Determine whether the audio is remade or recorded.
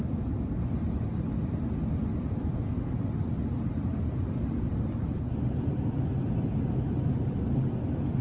remade